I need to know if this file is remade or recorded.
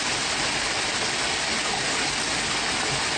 recorded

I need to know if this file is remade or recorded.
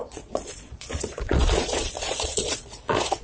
remade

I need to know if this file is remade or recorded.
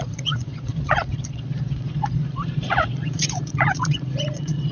remade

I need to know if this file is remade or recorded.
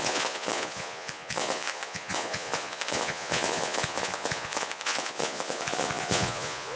remade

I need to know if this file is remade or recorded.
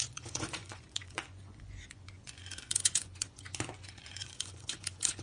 remade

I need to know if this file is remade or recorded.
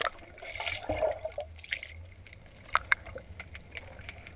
recorded